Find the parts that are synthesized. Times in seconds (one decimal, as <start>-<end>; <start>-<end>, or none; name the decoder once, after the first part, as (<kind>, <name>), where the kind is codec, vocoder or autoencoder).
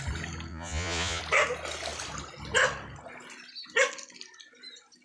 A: 0.5-1.2 (vocoder, Vocos)